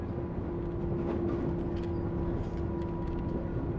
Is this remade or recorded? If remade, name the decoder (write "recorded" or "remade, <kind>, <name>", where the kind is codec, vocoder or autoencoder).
recorded